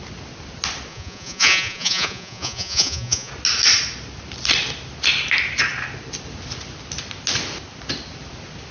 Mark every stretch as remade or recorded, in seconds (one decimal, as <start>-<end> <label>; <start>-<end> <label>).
0.0-0.9 recorded; 0.9-3.3 remade; 3.3-8.7 recorded